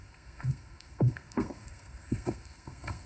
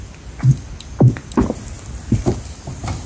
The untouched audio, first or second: second